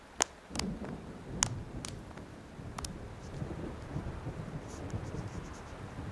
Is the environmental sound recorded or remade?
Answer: recorded